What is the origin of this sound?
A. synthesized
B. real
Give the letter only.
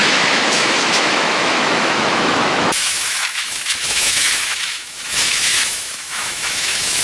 A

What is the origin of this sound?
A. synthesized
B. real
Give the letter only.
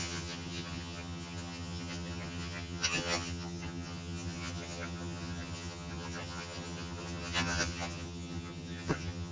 A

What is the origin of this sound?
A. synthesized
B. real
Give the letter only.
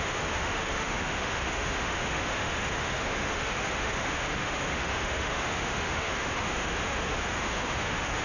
A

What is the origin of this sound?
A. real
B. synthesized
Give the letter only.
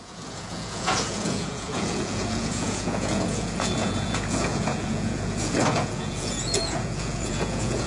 B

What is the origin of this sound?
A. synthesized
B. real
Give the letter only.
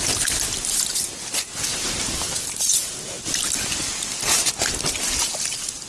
B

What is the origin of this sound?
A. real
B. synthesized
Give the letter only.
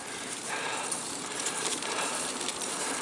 B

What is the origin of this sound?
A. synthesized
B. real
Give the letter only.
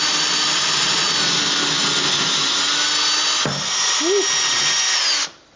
B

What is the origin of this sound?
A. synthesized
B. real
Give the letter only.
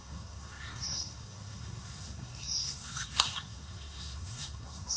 A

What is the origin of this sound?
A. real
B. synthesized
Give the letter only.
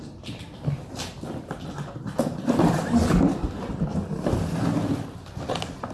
A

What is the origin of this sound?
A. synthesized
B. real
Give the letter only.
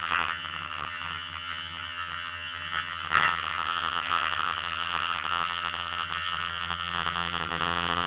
A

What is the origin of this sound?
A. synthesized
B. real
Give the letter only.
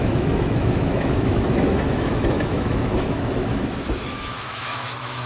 A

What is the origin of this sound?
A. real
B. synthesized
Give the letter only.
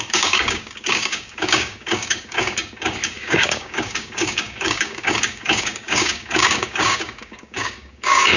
B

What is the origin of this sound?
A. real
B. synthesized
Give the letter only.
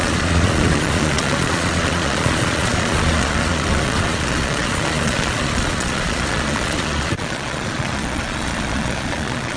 B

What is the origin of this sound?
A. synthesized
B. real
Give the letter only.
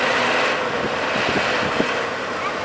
B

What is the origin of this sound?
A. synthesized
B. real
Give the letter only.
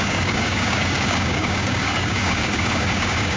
A